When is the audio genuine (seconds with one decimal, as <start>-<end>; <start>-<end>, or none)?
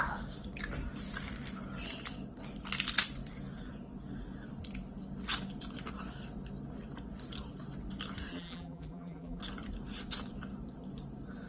0.0-8.3; 9.4-11.5